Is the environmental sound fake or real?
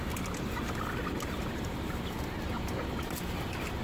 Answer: real